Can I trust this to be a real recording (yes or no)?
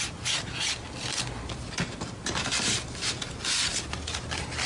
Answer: yes